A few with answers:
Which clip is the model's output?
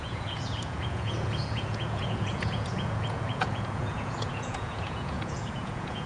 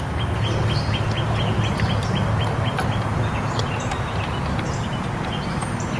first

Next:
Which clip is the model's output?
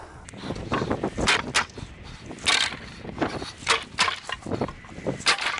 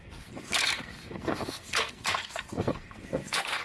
second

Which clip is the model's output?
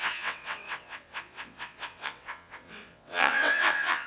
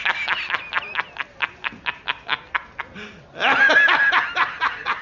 first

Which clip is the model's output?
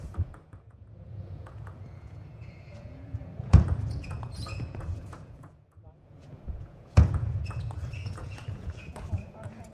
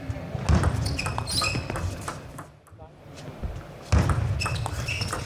first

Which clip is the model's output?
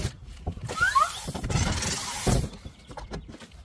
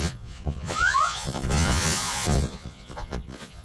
second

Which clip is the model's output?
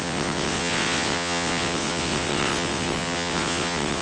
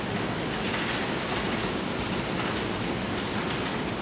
first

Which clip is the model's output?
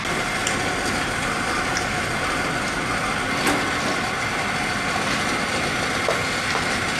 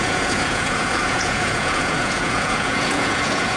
second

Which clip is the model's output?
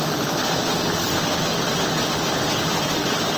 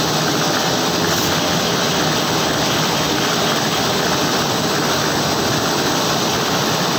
first